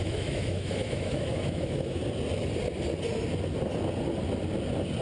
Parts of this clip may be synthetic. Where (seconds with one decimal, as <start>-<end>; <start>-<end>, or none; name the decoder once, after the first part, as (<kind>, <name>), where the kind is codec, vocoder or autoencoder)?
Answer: 0.0-2.0 (autoencoder, DAC-VAE)